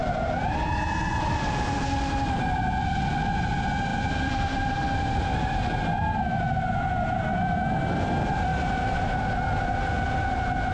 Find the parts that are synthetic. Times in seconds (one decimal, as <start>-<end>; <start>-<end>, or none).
0.0-0.8; 3.9-7.4; 8.5-9.2